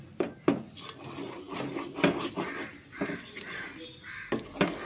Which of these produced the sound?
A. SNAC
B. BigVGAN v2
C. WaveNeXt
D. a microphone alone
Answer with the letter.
D